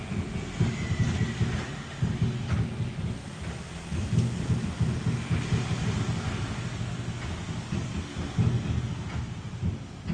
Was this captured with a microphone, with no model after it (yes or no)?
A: yes